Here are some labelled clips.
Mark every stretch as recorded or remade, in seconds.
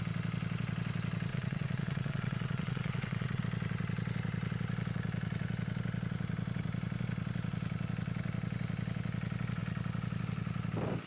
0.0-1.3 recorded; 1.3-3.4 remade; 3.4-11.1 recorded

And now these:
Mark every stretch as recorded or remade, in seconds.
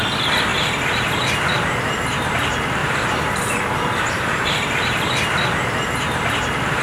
0.0-0.5 recorded; 0.5-2.3 remade; 2.3-2.8 recorded; 2.8-6.8 remade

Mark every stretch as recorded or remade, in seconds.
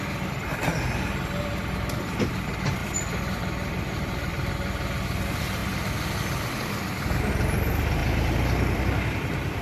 0.0-2.8 recorded; 2.8-4.5 remade; 4.5-8.0 recorded; 8.0-8.8 remade; 8.8-9.6 recorded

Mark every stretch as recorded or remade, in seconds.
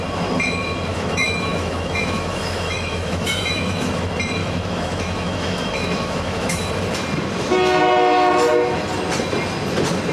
0.0-0.9 recorded; 0.9-3.9 remade; 3.9-4.4 recorded; 4.4-6.7 remade; 6.7-10.1 recorded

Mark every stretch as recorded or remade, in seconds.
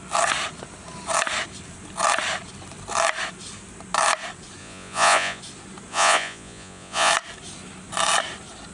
0.0-4.6 recorded; 4.6-5.4 remade; 5.4-5.9 recorded; 5.9-7.1 remade; 7.1-8.7 recorded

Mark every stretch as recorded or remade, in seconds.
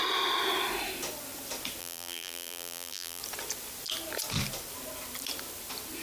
0.0-1.8 recorded; 1.8-3.2 remade; 3.2-6.0 recorded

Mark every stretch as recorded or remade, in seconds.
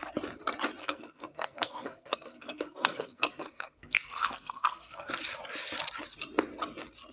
0.0-0.8 recorded; 0.8-5.1 remade; 5.1-7.1 recorded